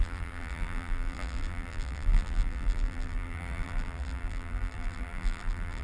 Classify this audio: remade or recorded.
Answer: remade